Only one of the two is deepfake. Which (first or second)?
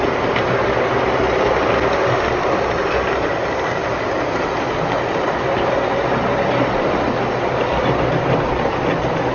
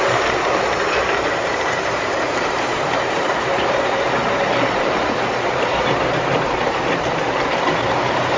second